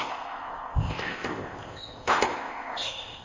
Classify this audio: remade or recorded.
remade